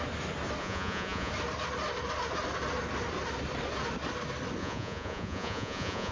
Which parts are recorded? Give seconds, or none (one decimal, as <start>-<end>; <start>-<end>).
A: 0.0-0.6; 1.3-4.6